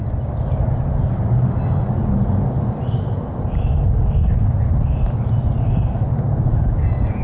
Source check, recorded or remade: recorded